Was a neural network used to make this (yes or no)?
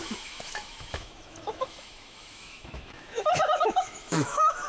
yes